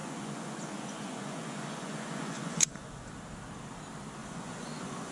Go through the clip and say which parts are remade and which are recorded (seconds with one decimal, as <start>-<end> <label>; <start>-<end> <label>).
0.0-3.1 remade; 3.1-4.2 recorded; 4.2-5.1 remade